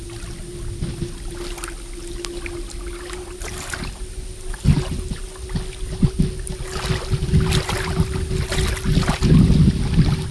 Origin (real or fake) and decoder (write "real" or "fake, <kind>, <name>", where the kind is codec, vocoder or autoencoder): real